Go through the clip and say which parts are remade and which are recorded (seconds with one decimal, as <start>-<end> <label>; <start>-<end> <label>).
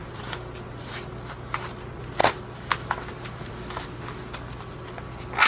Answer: 0.0-5.5 recorded